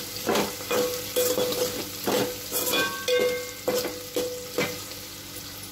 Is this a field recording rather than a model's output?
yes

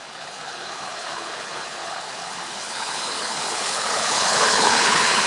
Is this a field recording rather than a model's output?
no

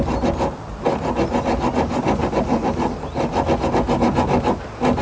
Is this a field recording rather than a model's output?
yes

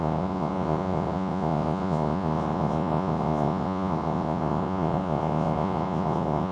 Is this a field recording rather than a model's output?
no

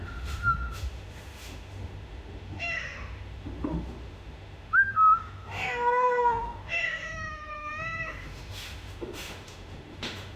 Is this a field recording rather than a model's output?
no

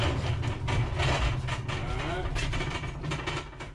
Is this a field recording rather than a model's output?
yes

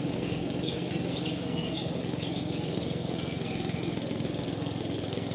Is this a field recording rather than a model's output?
no